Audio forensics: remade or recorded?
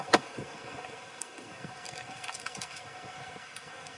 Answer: remade